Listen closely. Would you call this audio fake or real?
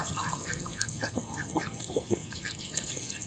fake